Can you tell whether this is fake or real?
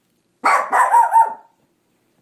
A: real